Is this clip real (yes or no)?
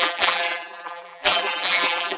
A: no